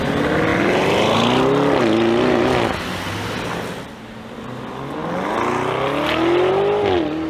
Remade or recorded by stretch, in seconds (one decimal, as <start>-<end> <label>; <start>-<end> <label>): 0.0-7.3 recorded